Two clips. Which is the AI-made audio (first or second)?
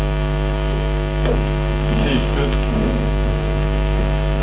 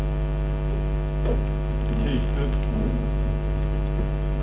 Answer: first